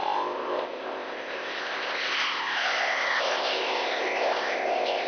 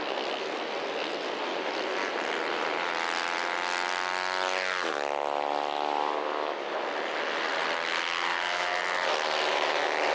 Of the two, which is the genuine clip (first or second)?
second